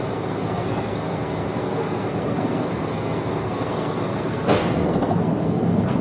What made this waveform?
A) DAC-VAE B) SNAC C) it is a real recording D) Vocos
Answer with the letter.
B